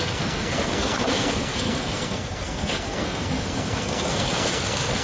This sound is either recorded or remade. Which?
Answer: remade